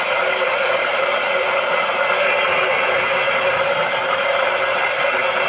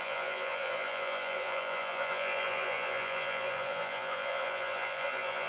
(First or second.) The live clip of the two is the first